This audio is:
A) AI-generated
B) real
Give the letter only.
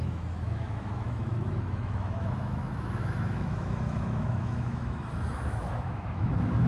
A